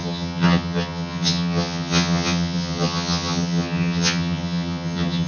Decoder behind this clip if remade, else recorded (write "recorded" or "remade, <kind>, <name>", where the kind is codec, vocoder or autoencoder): remade, vocoder, HiFi-GAN